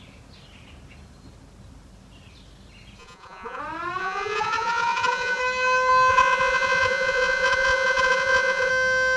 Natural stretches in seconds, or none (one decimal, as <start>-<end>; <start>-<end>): 0.0-3.0; 3.6-4.0; 5.4-6.1; 8.7-9.2